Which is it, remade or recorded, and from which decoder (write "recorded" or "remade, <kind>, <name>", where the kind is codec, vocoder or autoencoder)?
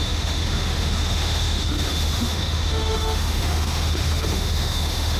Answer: remade, autoencoder, DAC-VAE